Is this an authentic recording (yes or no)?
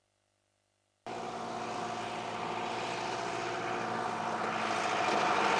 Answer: yes